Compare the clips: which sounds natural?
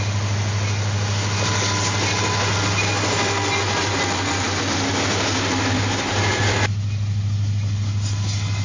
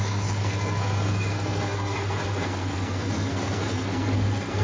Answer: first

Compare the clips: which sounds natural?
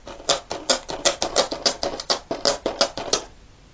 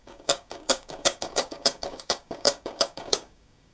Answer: first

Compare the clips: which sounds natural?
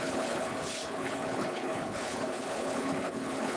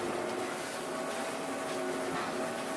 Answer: second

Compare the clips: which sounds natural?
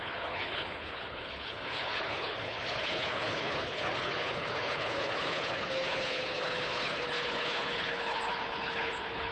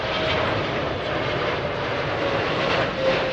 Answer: second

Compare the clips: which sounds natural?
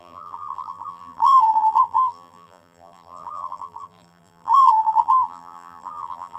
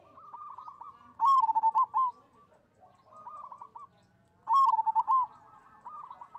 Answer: second